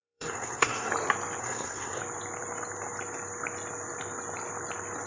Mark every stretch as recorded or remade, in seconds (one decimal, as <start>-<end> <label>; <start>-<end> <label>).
0.0-0.9 remade; 0.9-1.4 recorded; 1.4-2.0 remade; 2.0-5.1 recorded